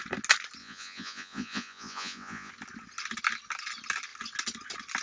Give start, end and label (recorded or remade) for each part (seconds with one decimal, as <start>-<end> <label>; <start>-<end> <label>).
0.0-0.6 recorded; 0.6-2.5 remade; 2.5-5.0 recorded